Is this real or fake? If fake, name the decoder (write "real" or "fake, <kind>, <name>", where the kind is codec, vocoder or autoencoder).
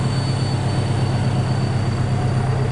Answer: real